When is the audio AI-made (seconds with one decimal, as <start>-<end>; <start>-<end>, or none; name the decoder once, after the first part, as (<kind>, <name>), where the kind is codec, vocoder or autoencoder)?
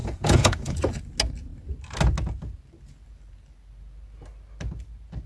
0.0-1.0 (vocoder, Vocos)